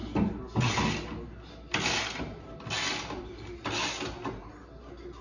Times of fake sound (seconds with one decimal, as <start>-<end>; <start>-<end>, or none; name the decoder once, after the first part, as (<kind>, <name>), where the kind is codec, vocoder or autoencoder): none